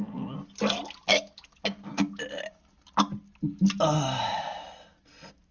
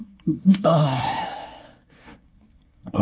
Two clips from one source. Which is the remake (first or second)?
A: second